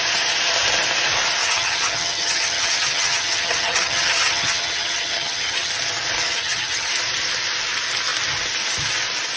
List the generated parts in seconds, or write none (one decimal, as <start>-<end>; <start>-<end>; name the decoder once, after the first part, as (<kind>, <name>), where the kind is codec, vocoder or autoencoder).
1.4-5.7 (vocoder, HiFi-GAN); 6.2-6.9